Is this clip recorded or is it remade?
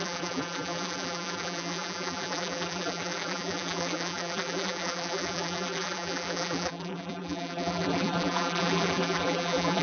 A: remade